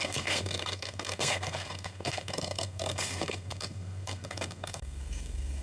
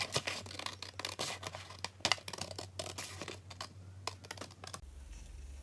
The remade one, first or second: first